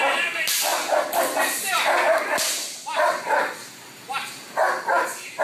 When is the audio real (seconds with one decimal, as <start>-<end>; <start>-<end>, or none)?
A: 0.7-1.4